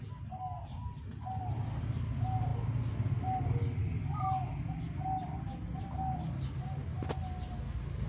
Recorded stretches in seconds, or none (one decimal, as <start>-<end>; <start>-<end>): 0.0-8.1